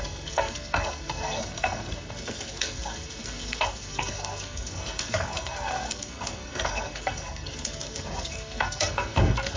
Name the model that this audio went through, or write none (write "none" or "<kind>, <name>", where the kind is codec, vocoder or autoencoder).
codec, SNAC